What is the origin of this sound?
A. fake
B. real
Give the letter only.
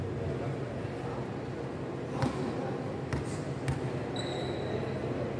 B